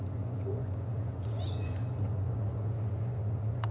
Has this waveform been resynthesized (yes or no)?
yes